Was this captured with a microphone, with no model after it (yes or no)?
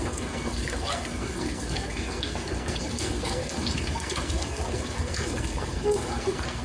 no